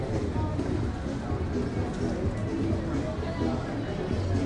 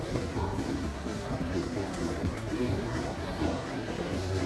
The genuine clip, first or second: first